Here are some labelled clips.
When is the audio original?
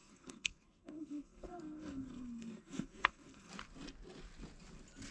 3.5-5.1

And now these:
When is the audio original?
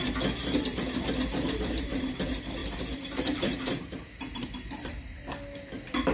0.0-0.7; 2.1-2.6; 5.2-6.1